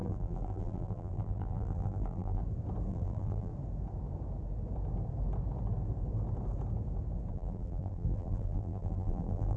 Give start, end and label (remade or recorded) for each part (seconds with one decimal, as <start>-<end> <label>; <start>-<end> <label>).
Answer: 0.0-2.4 remade; 2.4-2.9 recorded; 2.9-3.5 remade; 3.5-7.3 recorded; 7.3-9.6 remade